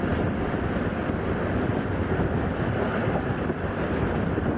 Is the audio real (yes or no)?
yes